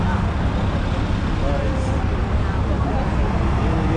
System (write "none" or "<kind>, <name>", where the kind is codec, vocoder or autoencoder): none